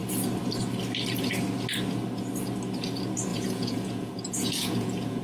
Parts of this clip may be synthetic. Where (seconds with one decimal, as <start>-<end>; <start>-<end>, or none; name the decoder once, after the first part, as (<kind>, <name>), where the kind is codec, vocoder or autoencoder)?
3.3-5.2 (vocoder, Vocos)